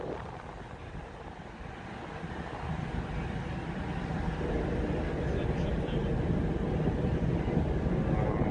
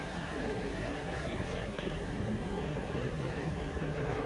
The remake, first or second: second